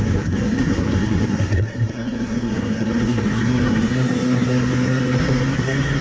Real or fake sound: fake